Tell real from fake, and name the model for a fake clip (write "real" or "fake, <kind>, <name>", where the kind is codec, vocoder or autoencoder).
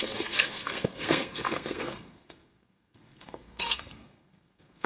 fake, codec, SNAC